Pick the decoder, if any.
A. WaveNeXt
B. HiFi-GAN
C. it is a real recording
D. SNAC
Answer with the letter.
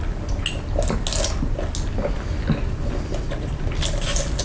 C